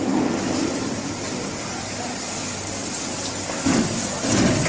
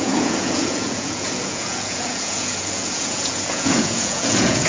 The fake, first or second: second